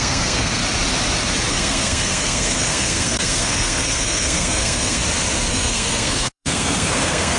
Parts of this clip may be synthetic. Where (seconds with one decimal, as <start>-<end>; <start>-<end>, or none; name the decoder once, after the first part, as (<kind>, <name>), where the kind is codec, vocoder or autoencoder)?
0.0-0.6 (codec, SNAC); 1.5-5.0; 5.5-7.4